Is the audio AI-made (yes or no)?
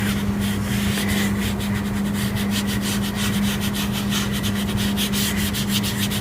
no